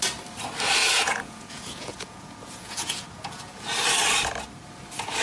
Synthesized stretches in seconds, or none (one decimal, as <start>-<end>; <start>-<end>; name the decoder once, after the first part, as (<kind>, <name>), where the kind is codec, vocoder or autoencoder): 0.8-3.5 (vocoder, Vocos)